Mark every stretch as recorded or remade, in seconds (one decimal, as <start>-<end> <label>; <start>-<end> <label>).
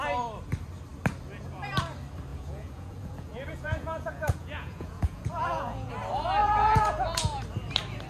0.0-2.3 recorded; 2.3-5.9 remade; 5.9-6.4 recorded; 6.4-7.4 remade; 7.4-8.1 recorded